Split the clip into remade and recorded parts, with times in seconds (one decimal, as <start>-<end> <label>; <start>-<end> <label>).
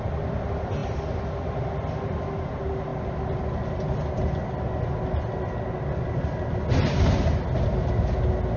0.0-8.6 recorded